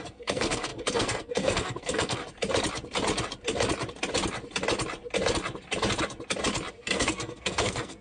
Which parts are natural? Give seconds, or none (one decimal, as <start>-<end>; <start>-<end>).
2.2-6.7